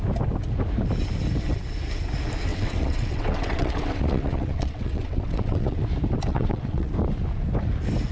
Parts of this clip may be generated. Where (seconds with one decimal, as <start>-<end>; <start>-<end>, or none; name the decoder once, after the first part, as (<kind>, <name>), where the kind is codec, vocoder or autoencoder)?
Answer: 2.5-5.8 (vocoder, WaveNeXt); 6.3-6.9